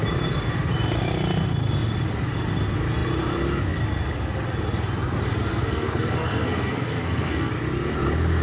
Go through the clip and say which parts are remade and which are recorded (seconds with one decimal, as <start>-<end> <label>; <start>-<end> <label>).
0.0-5.5 recorded; 5.5-7.5 remade; 7.5-8.4 recorded